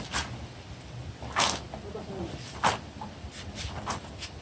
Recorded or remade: recorded